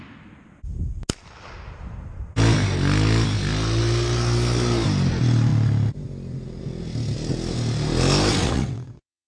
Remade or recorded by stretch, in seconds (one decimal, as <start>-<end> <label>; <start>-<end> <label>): 0.0-8.4 recorded; 8.4-9.3 remade

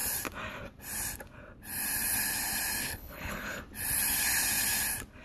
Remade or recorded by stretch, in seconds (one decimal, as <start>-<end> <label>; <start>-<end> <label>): 0.0-2.8 recorded; 2.8-3.6 remade; 3.6-5.2 recorded